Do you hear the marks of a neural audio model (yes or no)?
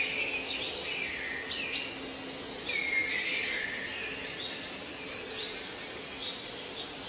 no